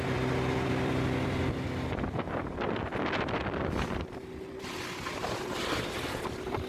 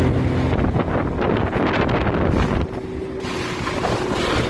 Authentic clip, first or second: second